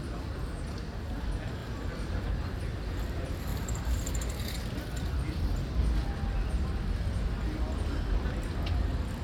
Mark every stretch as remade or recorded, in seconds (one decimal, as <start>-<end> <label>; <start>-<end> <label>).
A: 0.0-1.6 recorded; 1.6-2.3 remade; 2.3-3.5 recorded; 3.5-4.1 remade; 4.1-9.2 recorded